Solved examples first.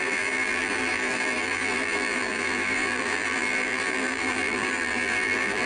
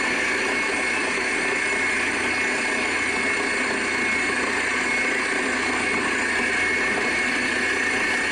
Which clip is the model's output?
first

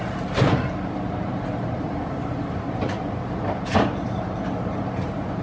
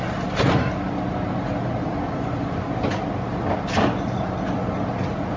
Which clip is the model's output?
first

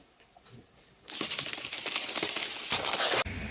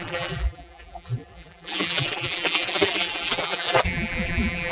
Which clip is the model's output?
second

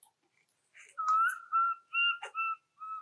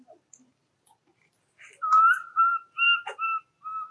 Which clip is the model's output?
second